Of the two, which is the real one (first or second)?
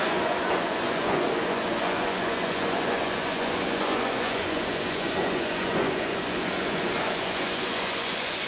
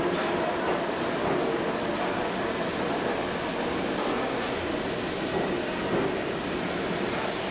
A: second